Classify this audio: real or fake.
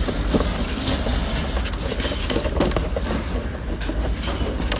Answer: real